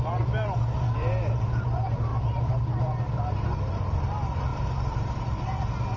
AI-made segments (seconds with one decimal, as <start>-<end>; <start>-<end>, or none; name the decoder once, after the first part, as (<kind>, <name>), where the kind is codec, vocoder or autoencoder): 0.0-6.0 (vocoder, BigVGAN v2)